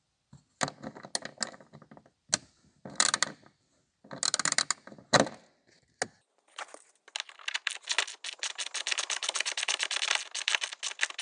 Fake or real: real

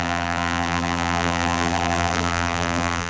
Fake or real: fake